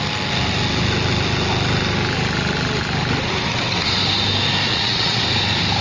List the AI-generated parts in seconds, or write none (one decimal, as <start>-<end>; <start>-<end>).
4.7-5.2